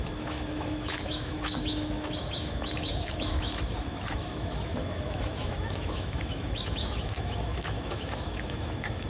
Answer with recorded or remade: remade